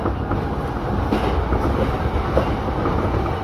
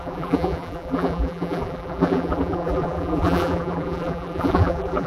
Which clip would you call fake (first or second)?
second